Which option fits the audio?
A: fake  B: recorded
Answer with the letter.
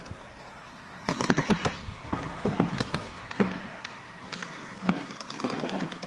A